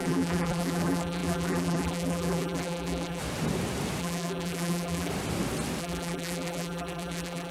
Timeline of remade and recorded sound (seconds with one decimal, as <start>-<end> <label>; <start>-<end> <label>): 0.0-3.2 remade; 3.2-4.0 recorded; 4.0-5.1 remade; 5.1-5.8 recorded; 5.8-7.5 remade